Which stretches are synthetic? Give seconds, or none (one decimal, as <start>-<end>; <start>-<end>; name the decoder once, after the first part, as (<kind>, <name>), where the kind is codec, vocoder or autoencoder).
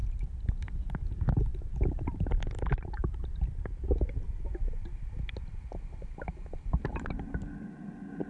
6.9-7.4 (vocoder, BigVGAN v2)